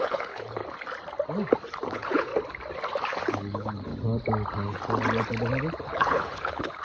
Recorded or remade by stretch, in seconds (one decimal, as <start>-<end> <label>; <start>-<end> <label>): 0.0-0.6 remade; 0.6-1.9 recorded; 1.9-2.3 remade; 2.3-3.3 recorded; 3.3-3.9 remade; 3.9-5.8 recorded; 5.8-6.8 remade

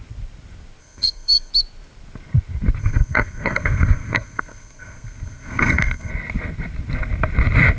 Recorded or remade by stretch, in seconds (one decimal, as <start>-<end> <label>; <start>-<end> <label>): 0.0-0.8 recorded; 0.8-1.5 remade; 1.5-2.8 recorded; 2.8-6.1 remade; 6.1-7.8 recorded

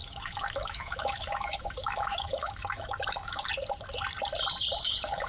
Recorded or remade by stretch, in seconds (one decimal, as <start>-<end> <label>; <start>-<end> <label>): 0.0-3.5 remade; 3.5-4.8 recorded; 4.8-5.3 remade

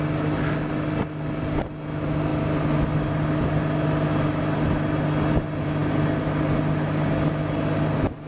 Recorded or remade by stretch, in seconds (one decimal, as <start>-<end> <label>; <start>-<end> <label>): 0.0-8.3 recorded

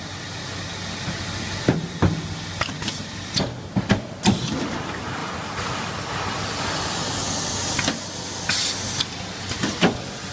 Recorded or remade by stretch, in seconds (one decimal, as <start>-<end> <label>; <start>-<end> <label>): 0.0-5.2 recorded; 5.2-6.6 remade; 6.6-10.3 recorded